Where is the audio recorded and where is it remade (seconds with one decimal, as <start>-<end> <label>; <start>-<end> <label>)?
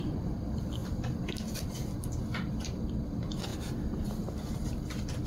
0.0-0.8 remade; 0.8-2.5 recorded; 2.5-3.5 remade; 3.5-5.3 recorded